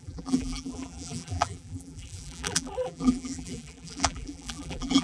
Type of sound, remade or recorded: remade